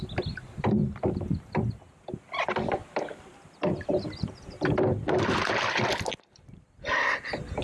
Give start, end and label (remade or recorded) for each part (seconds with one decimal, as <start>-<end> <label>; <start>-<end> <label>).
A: 0.0-0.8 recorded; 0.8-2.1 remade; 2.1-2.8 recorded; 2.8-6.6 remade; 6.6-7.6 recorded